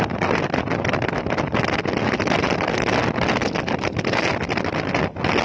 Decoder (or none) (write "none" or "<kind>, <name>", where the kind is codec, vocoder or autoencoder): none